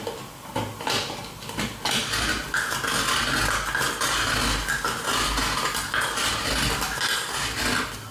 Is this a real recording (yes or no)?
yes